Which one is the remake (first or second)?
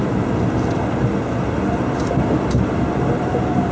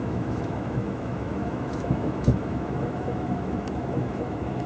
second